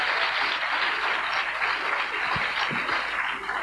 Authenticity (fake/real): real